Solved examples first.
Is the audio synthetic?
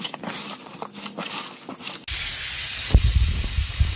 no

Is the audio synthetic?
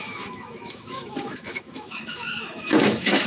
yes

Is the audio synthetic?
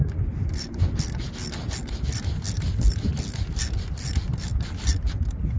no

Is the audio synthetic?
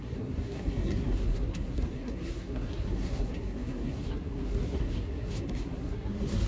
yes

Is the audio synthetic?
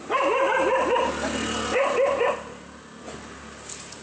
no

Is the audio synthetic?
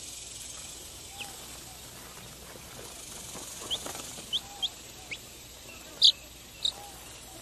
no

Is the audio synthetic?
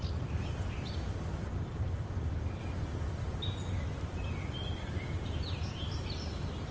no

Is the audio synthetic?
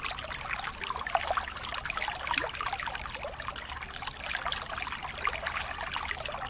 no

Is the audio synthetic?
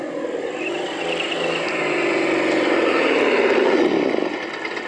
no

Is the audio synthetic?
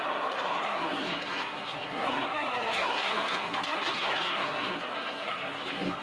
yes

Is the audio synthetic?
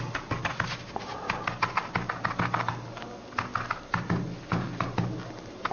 no